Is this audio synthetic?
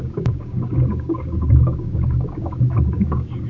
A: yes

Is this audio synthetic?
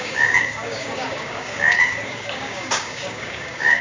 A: yes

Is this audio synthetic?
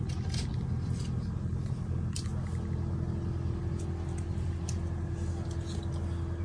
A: no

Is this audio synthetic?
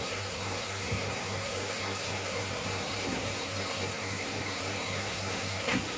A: yes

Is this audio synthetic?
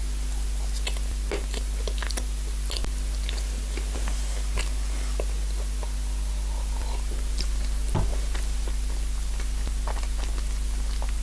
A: no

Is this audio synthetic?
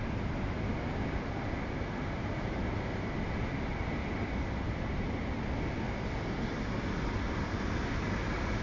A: no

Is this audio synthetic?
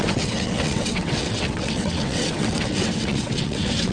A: yes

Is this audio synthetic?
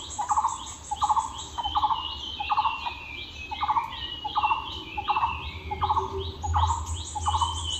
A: no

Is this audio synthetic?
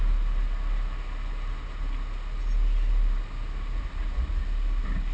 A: no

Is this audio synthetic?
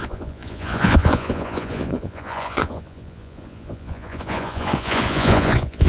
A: yes